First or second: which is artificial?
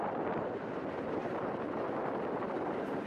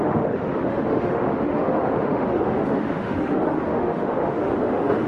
second